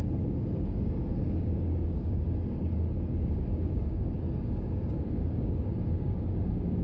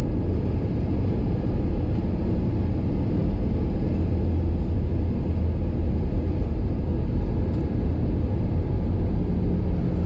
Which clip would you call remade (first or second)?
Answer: first